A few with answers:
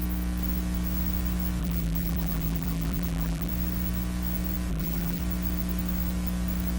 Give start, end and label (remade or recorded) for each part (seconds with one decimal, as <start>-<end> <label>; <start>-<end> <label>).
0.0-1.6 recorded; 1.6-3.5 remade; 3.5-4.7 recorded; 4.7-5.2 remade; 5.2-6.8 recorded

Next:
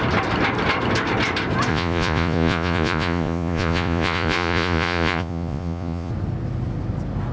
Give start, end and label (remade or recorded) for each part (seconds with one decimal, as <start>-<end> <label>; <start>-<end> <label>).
0.0-1.7 recorded; 1.7-6.1 remade; 6.1-7.3 recorded

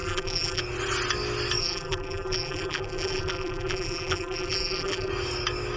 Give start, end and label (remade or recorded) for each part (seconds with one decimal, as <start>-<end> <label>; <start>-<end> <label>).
0.0-0.6 remade; 0.6-1.6 recorded; 1.6-5.1 remade; 5.1-5.8 recorded

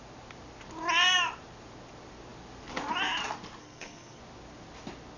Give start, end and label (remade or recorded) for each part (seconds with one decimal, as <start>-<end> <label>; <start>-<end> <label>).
0.0-3.6 recorded; 3.6-4.2 remade; 4.2-5.2 recorded

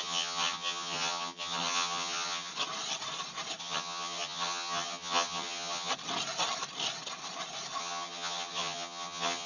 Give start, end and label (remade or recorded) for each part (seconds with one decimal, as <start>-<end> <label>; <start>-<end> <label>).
0.0-2.5 remade; 2.5-3.6 recorded; 3.6-5.9 remade; 5.9-7.8 recorded; 7.8-9.5 remade

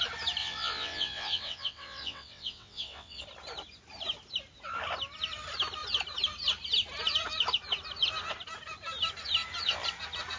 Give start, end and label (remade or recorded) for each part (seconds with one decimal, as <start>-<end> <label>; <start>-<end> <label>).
0.0-0.4 recorded; 0.4-3.2 remade; 3.2-10.4 recorded

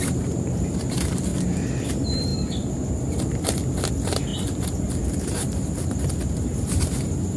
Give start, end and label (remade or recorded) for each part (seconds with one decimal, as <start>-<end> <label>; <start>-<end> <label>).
0.0-1.3 remade; 1.3-1.9 recorded; 1.9-2.3 remade; 2.3-3.9 recorded; 3.9-7.4 remade